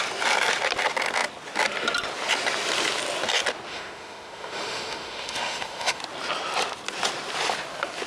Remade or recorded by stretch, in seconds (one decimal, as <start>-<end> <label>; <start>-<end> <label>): 0.0-3.7 recorded; 3.7-6.0 remade; 6.0-8.1 recorded